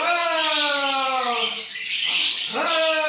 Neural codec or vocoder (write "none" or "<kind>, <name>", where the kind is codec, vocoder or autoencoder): none